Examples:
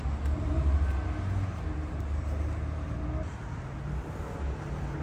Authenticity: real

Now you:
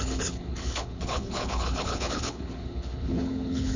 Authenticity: fake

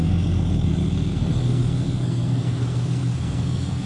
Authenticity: fake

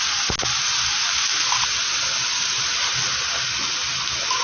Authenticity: real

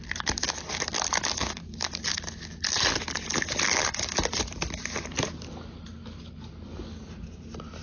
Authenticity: real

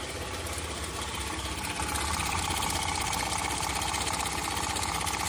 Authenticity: real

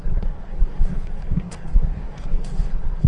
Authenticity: fake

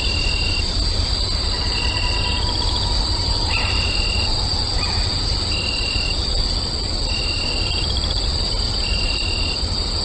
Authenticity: real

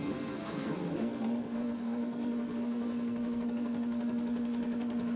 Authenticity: fake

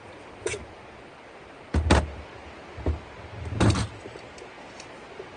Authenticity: real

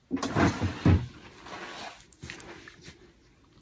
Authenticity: real